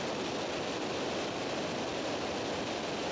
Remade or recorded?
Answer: recorded